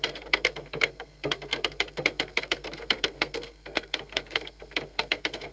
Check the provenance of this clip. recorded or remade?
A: remade